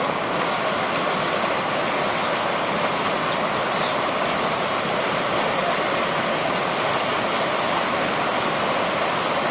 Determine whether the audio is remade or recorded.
recorded